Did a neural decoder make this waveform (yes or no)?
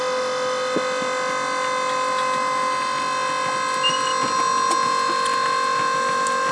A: no